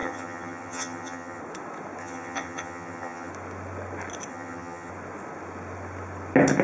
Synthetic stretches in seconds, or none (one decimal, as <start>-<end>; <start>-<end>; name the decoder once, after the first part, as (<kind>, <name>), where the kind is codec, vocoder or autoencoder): 0.0-1.4 (vocoder, HiFi-GAN); 2.0-3.3; 4.3-4.9